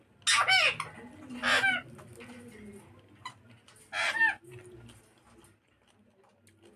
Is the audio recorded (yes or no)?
yes